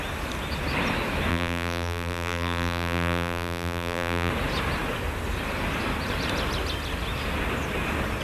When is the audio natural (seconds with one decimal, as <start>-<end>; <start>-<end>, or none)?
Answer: 0.0-1.3; 4.3-8.2